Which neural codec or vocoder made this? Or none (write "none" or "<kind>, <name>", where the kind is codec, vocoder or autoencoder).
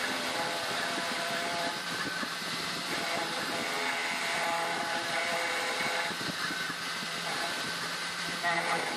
vocoder, BigVGAN v2